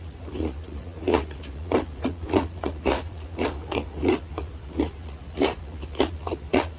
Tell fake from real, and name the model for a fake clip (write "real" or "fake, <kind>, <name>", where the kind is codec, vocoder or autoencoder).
fake, vocoder, Vocos